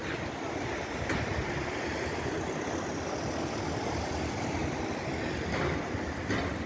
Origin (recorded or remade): recorded